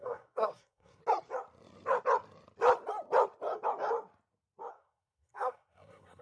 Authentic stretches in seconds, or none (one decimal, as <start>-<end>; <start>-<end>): 1.0-4.7